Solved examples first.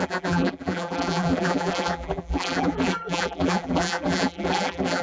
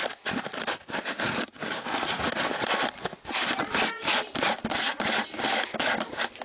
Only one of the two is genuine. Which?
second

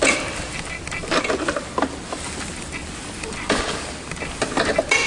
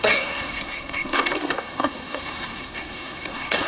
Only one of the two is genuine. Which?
first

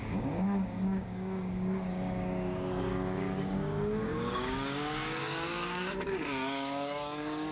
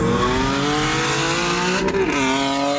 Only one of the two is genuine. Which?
second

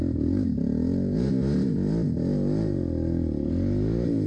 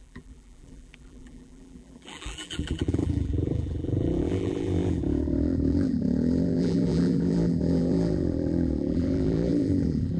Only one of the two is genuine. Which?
first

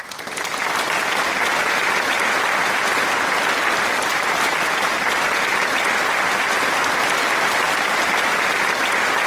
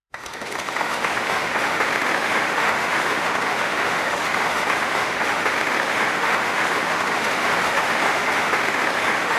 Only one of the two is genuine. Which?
first